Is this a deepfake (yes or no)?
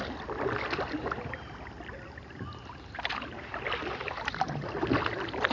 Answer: no